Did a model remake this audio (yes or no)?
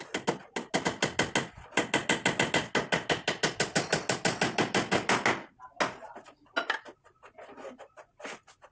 no